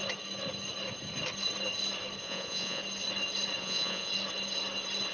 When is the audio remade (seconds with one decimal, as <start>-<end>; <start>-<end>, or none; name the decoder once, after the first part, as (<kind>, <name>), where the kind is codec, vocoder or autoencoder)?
2.2-2.8 (vocoder, Vocos); 3.6-4.1